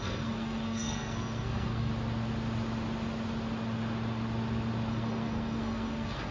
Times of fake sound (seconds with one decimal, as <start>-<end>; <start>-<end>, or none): 0.0-1.9; 4.9-6.3